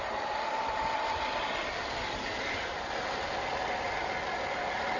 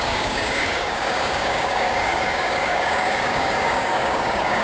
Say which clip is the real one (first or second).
first